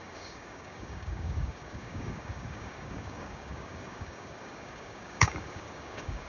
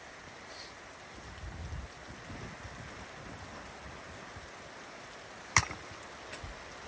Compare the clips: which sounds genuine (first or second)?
second